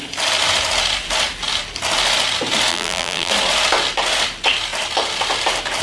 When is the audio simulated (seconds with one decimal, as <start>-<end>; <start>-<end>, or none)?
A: 2.7-3.3